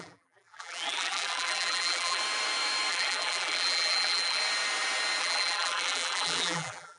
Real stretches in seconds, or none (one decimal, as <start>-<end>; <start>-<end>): 2.2-2.9; 4.4-5.2